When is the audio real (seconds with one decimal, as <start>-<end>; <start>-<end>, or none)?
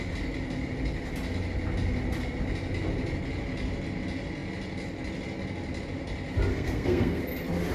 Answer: 0.0-6.5; 7.2-7.7